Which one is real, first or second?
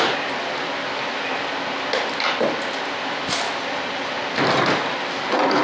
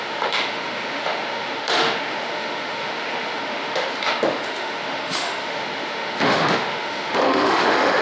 first